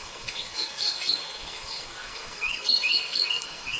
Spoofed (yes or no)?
yes